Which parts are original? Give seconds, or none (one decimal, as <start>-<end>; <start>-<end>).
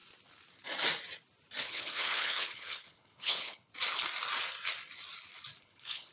0.0-1.6; 3.7-5.6